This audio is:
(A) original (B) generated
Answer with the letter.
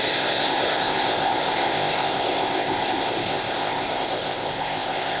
B